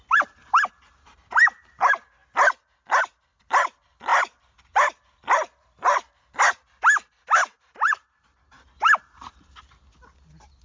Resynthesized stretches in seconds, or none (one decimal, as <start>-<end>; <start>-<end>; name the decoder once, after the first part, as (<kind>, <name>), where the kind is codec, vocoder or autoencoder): none